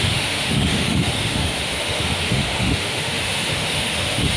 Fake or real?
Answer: fake